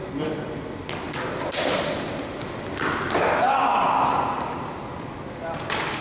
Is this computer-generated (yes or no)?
no